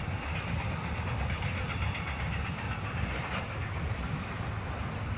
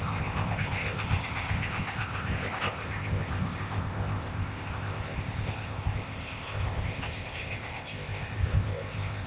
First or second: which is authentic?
first